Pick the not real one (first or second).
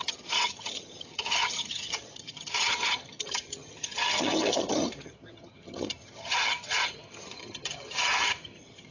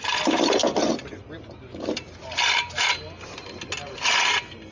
first